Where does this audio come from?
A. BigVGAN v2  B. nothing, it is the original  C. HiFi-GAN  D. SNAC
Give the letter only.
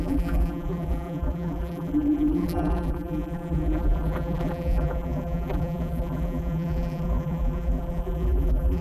A